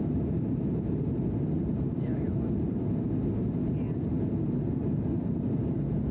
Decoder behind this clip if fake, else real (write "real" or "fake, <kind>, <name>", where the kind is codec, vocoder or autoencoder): real